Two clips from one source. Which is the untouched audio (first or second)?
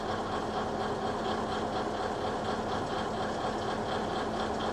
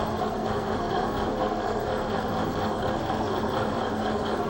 first